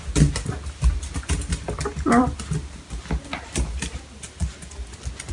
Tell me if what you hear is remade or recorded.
recorded